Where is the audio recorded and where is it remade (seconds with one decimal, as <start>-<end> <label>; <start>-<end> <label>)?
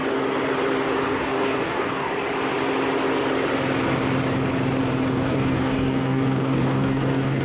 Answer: 0.0-1.1 recorded; 1.1-2.1 remade; 2.1-5.1 recorded; 5.1-7.4 remade